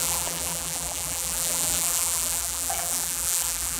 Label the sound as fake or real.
fake